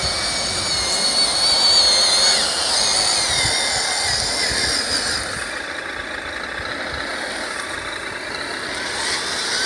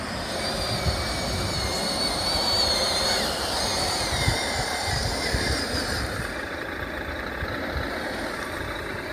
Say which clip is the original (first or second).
first